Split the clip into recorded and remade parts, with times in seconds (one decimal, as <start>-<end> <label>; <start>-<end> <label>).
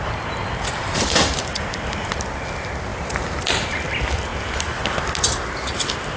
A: 0.0-0.8 recorded; 0.8-2.1 remade; 2.1-2.9 recorded; 2.9-3.4 remade; 3.4-6.2 recorded